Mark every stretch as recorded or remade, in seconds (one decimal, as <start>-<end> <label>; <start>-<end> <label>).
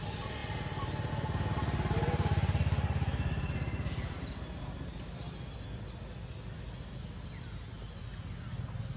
0.0-2.3 recorded; 2.3-4.9 remade; 4.9-9.0 recorded